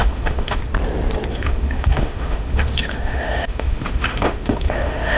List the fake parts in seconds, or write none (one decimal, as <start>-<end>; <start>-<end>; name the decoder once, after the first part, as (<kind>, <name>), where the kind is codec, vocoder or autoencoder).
0.0-0.6 (autoencoder, DAC-VAE); 1.3-5.2